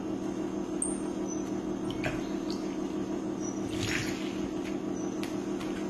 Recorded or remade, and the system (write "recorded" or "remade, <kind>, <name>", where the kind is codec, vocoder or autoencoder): recorded